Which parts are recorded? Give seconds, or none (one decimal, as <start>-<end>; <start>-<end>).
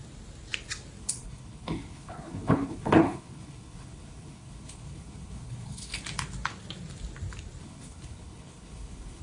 0.0-1.0; 6.0-7.6